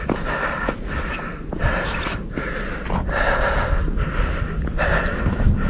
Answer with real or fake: real